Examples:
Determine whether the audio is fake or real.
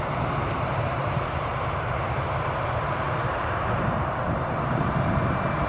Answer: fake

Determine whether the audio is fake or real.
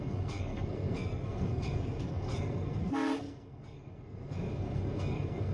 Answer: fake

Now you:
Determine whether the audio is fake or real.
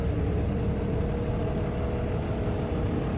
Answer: real